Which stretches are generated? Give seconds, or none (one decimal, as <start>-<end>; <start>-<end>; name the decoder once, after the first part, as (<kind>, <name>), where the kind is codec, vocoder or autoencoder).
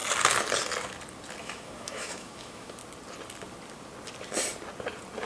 1.4-2.8 (autoencoder, DAC-VAE)